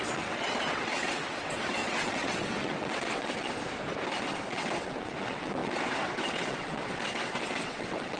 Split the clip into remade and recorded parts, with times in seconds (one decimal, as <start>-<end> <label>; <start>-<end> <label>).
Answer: 0.0-3.6 remade; 3.6-4.5 recorded; 4.5-8.2 remade